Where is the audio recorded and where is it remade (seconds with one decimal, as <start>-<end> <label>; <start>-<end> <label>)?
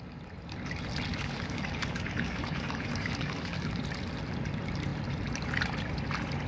0.0-1.1 recorded; 1.1-3.8 remade; 3.8-6.5 recorded